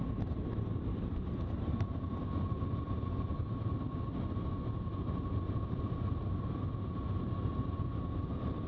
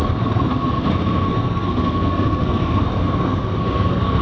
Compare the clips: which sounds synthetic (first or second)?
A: second